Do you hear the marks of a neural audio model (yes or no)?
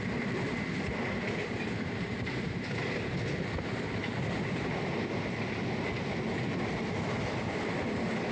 no